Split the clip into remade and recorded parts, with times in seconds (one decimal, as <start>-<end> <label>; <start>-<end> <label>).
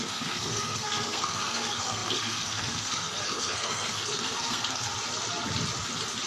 0.0-4.9 remade; 4.9-6.3 recorded